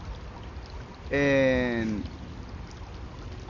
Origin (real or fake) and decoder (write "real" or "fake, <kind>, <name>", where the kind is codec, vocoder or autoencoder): real